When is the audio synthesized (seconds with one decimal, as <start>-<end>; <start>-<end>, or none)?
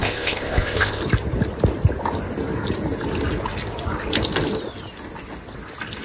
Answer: 0.0-1.0